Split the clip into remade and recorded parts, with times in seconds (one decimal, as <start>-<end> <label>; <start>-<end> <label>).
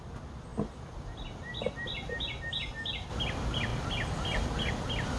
0.0-5.2 recorded